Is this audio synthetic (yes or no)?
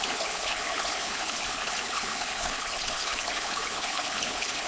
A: yes